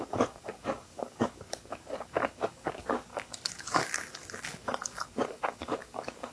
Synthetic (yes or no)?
yes